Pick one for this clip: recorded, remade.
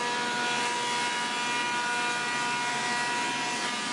recorded